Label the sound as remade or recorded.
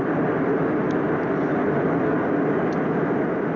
recorded